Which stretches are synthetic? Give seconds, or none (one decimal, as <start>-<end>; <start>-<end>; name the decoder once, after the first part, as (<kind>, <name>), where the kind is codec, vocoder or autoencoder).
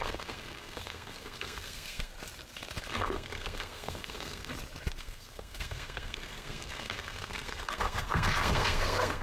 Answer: 0.0-2.1 (codec, SNAC); 2.8-4.5; 5.0-9.2